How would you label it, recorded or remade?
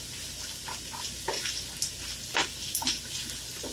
recorded